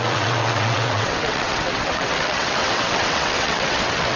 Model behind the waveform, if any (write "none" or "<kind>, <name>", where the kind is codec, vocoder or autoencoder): vocoder, WaveNeXt